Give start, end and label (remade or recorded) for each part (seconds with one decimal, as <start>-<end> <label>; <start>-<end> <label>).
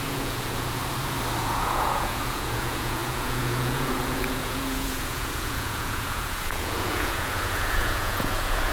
0.0-0.8 remade; 0.8-1.4 recorded; 1.4-8.7 remade